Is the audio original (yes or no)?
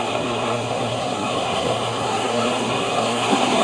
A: no